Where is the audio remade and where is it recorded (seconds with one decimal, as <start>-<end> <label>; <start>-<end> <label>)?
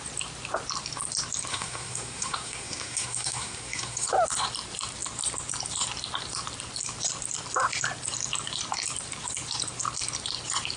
0.0-1.5 recorded; 1.5-4.1 remade; 4.1-10.8 recorded